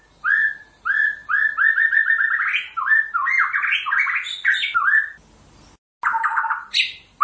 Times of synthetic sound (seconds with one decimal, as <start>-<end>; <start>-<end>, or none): 6.1-6.6